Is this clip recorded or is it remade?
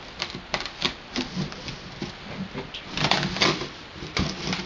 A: recorded